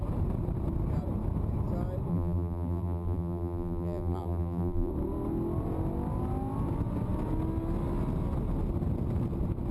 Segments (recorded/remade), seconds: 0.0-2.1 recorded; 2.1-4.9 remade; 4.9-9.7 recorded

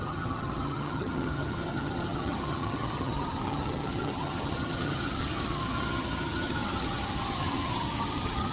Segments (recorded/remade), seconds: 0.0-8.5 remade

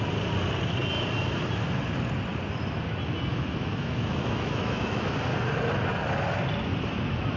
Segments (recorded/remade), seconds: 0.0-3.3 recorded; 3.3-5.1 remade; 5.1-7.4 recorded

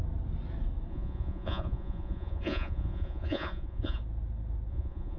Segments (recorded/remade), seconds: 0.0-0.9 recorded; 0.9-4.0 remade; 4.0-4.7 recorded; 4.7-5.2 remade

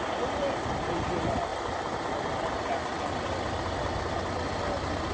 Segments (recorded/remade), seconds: 0.0-5.1 recorded

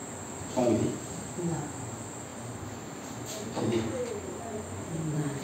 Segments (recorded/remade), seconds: 0.0-0.5 recorded; 0.5-5.4 remade

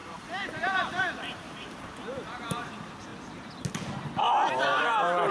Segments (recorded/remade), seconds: 0.0-3.1 remade; 3.1-4.5 recorded; 4.5-5.3 remade